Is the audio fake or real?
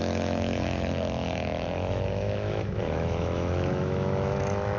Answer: fake